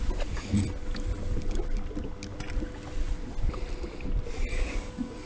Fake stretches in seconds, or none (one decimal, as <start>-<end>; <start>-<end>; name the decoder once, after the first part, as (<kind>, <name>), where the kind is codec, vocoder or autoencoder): 4.5-5.3 (codec, DAC)